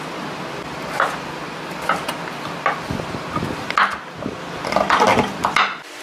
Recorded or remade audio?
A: recorded